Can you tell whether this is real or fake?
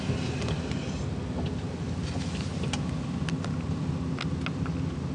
real